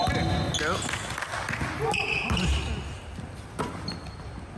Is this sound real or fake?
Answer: real